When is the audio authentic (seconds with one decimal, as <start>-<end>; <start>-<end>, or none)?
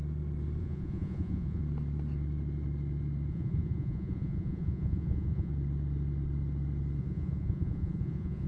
0.0-0.6; 1.6-3.3; 5.5-7.0